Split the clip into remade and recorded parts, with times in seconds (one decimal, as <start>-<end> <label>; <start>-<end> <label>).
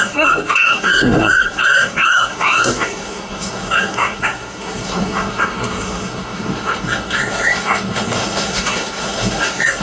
0.0-9.8 remade